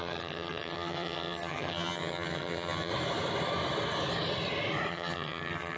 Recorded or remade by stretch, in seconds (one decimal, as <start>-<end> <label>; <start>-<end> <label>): 0.0-2.9 remade; 2.9-4.9 recorded; 4.9-5.8 remade